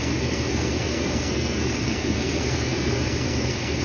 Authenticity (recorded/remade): remade